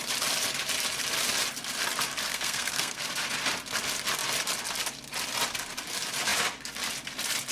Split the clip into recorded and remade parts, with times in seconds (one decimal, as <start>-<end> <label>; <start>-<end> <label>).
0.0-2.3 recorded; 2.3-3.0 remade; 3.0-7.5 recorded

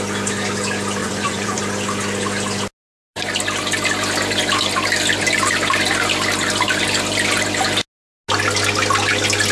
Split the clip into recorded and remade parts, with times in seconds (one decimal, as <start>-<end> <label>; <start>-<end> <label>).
0.0-1.0 recorded; 1.0-1.6 remade; 1.6-9.5 recorded

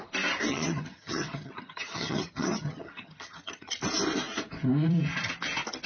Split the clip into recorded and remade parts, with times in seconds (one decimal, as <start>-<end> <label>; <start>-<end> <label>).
0.0-0.5 recorded; 0.5-3.7 remade; 3.7-5.9 recorded

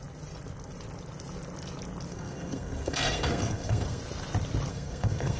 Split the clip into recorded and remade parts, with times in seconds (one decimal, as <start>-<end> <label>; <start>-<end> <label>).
0.0-2.1 recorded; 2.1-4.0 remade; 4.0-4.7 recorded; 4.7-5.4 remade

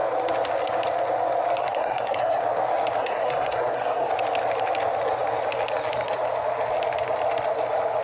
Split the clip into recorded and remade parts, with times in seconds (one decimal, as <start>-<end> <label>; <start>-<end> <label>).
0.0-1.6 recorded; 1.6-2.4 remade; 2.4-3.0 recorded; 3.0-4.1 remade; 4.1-8.0 recorded